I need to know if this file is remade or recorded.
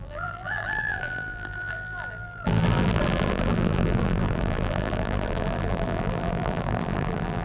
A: remade